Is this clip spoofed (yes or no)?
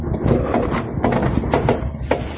no